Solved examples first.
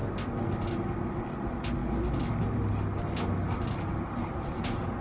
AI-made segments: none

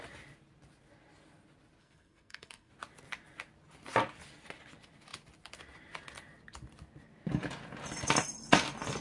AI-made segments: 1.8-2.7 (codec, SNAC)

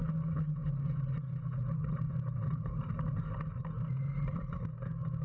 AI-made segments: none